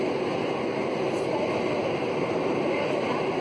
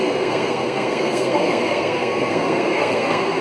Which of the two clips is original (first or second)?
first